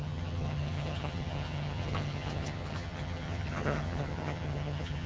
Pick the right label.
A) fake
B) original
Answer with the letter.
A